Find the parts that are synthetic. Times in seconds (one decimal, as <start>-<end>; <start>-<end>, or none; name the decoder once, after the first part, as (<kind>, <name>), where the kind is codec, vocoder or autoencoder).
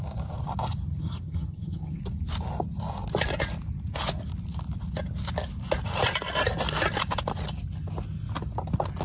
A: 1.0-2.0 (vocoder, HiFi-GAN)